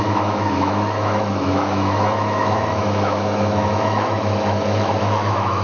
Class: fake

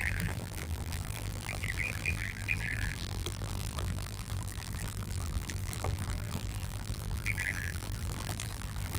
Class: fake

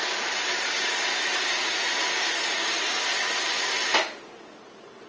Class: real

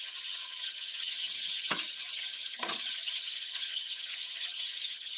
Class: fake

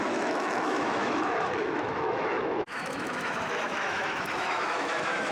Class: fake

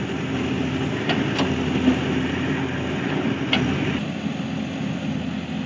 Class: real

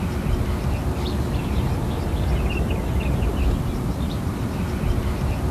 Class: real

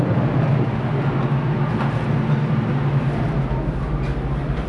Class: real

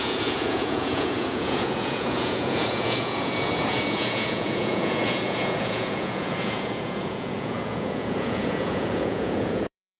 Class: fake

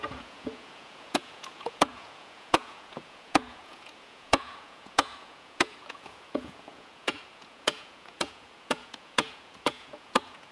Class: fake